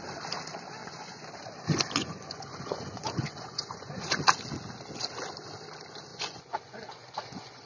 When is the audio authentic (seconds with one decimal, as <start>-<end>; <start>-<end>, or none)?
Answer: 0.0-0.8; 1.3-2.0; 4.2-6.1